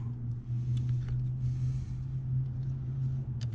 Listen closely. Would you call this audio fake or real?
real